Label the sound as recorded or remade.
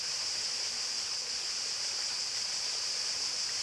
recorded